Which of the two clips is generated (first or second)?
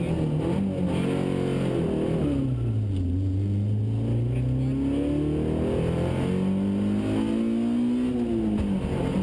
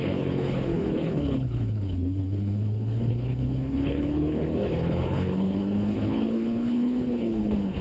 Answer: second